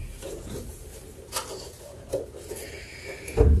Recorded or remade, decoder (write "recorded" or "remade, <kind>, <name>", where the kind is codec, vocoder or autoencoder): recorded